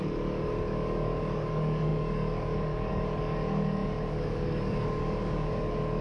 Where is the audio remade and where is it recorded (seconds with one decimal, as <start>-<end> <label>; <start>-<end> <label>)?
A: 0.0-6.0 remade